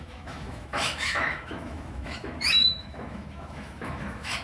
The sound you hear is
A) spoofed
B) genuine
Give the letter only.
A